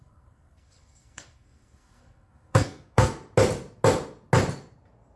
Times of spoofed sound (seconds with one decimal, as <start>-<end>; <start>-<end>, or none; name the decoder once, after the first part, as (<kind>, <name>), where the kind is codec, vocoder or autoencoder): 0.0-3.1 (codec, SNAC)